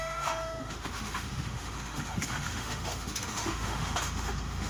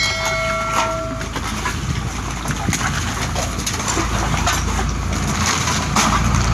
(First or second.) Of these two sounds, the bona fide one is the second